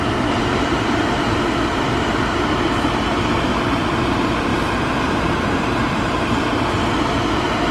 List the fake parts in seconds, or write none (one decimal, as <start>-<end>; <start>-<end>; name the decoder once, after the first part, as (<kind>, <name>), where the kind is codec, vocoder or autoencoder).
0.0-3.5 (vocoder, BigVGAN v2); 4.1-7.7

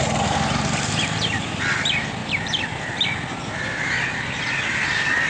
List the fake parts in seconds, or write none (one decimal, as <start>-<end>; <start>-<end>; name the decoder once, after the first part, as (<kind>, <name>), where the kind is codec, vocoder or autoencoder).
none

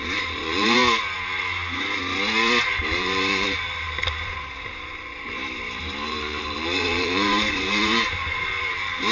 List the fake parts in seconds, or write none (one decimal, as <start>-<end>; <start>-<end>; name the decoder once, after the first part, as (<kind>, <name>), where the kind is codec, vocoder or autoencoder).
0.0-0.8 (vocoder, BigVGAN v2); 2.7-9.1